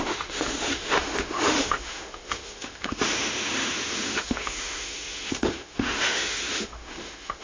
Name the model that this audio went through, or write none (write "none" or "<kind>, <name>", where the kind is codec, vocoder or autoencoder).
autoencoder, DAC-VAE